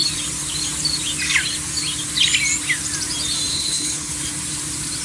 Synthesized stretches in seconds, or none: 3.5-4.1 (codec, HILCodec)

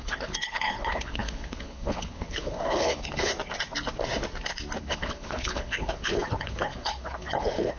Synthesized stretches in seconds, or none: 0.0-3.3 (codec, HILCodec); 4.8-7.8

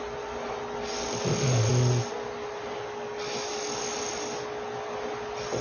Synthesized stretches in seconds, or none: none

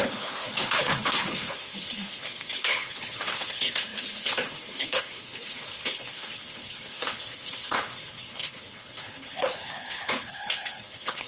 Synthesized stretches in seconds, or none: 0.0-11.3 (codec, HILCodec)

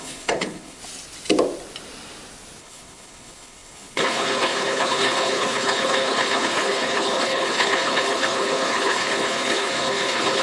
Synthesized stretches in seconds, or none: 0.0-0.8 (codec, HILCodec); 2.6-10.4

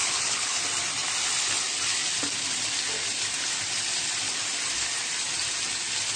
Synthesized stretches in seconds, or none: 0.0-0.6 (codec, HILCodec)

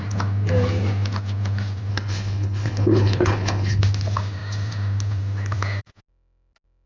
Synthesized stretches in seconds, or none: 1.9-3.8 (codec, HILCodec)

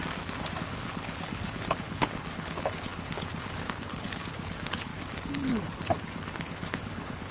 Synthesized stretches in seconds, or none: 0.6-7.3 (codec, HILCodec)